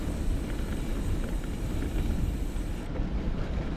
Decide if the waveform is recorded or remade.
recorded